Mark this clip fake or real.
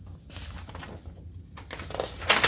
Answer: real